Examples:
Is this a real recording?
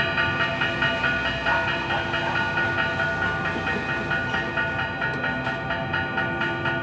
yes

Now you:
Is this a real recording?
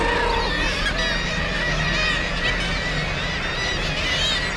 yes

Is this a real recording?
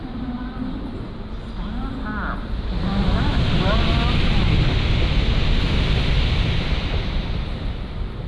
yes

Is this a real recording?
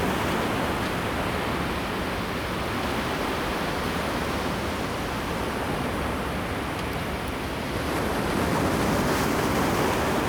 yes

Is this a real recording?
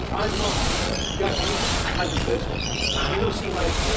no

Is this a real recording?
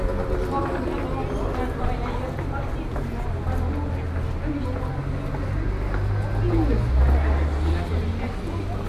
yes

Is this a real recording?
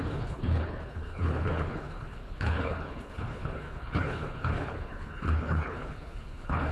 no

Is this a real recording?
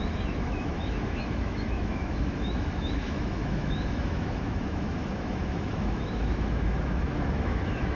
no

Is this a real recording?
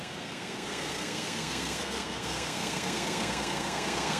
no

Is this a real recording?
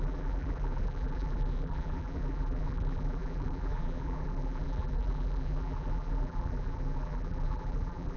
no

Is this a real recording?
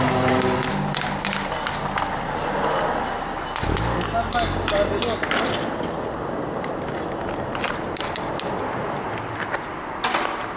yes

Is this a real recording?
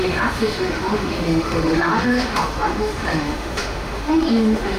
no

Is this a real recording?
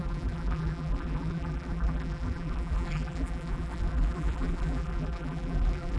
no